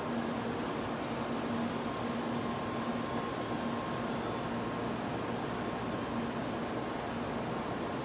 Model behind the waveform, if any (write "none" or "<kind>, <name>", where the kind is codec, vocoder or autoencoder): none